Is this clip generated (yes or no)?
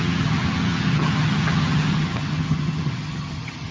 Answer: yes